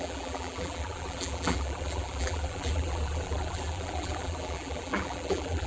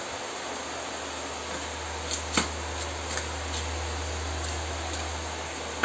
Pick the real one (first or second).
second